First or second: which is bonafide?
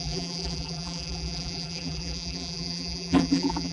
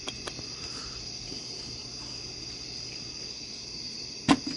second